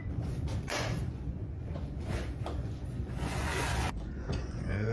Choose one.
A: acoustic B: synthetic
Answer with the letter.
B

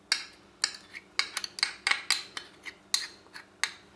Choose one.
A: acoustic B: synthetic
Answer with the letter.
A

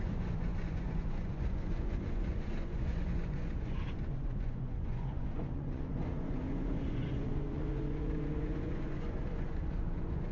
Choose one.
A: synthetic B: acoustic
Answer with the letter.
A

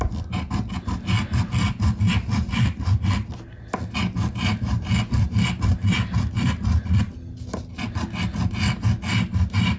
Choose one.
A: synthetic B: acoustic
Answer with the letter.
B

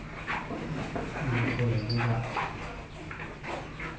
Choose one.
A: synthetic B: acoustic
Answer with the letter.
B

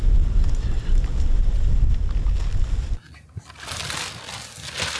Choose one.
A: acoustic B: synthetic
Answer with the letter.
A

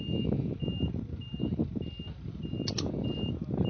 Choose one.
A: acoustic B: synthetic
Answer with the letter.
A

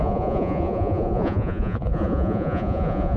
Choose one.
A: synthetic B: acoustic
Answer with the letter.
A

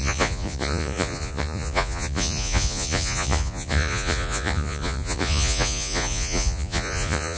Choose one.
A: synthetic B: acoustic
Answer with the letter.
A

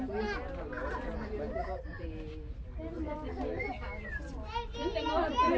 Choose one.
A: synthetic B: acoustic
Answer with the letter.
B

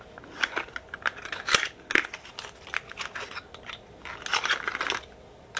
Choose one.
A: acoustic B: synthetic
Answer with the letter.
A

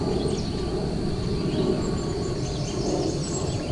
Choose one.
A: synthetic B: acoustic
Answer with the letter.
B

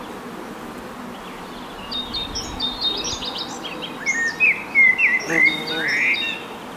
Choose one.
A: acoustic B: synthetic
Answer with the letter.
A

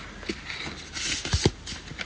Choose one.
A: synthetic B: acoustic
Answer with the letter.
B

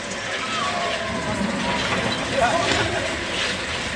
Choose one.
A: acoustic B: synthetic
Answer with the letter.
A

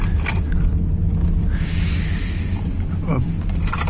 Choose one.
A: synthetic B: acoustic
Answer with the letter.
B